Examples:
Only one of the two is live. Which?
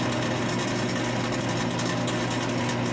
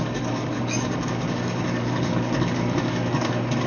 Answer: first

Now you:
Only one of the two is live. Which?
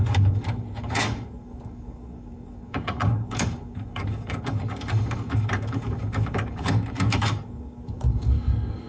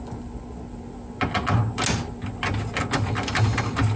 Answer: second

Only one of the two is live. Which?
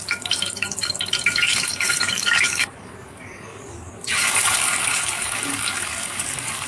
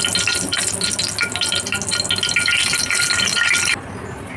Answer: second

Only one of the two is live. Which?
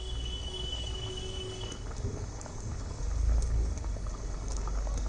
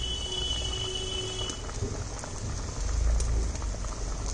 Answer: second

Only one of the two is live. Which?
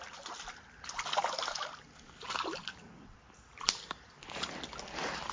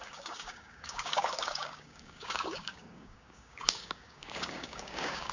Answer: first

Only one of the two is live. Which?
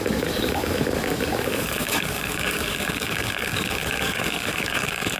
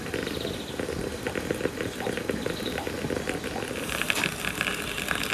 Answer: second